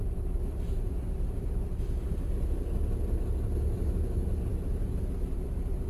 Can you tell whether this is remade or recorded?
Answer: recorded